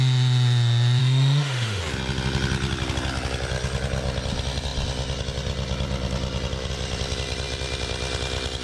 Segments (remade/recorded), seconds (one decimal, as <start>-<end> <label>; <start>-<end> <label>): 0.0-1.0 recorded; 1.0-1.8 remade; 1.8-8.6 recorded

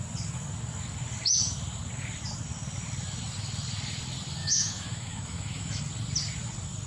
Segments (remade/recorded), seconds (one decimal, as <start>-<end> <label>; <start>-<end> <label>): 0.0-4.4 recorded; 4.4-5.8 remade; 5.8-6.9 recorded

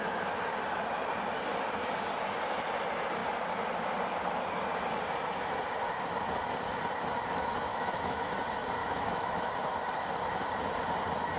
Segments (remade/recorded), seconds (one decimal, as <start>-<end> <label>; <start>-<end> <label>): 0.0-7.7 recorded; 7.7-8.3 remade; 8.3-8.8 recorded; 8.8-9.5 remade; 9.5-11.4 recorded